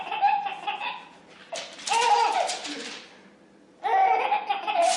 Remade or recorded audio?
recorded